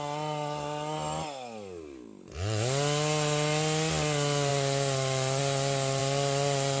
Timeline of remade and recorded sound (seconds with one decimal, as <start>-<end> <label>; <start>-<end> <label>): 0.0-6.8 recorded